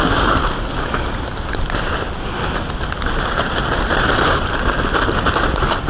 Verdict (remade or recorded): recorded